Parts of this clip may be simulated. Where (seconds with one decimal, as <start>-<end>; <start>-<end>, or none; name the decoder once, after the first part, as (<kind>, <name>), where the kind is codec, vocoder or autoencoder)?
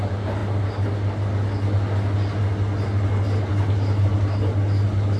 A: none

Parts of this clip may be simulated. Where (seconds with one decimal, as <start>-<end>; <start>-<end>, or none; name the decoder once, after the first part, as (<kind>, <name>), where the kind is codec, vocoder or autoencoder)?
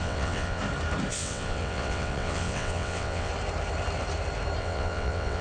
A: 0.0-0.6 (vocoder, WaveNeXt); 1.1-3.3; 4.6-5.4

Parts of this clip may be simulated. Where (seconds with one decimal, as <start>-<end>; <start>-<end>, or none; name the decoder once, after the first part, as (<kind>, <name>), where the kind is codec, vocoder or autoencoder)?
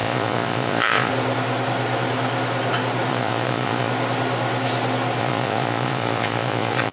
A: 0.0-1.1 (vocoder, Vocos); 3.1-3.9; 5.2-6.9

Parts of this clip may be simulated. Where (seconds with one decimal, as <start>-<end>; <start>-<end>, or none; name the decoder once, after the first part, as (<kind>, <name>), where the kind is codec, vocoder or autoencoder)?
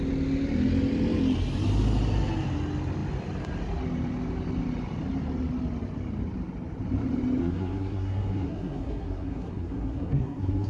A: 7.4-10.7 (codec, SNAC)